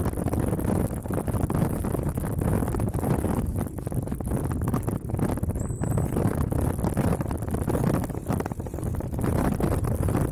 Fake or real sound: real